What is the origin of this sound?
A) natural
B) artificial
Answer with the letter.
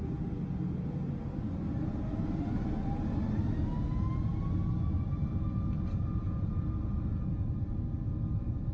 A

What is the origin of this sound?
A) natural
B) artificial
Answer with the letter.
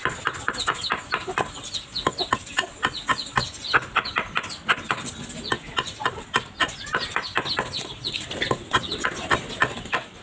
A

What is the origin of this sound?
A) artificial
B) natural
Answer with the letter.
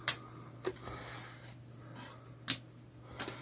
B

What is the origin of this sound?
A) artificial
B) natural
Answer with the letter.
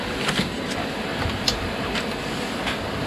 B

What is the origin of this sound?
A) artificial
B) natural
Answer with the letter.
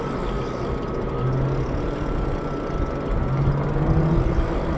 B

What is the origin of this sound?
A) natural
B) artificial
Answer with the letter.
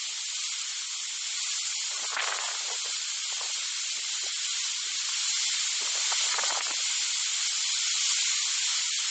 A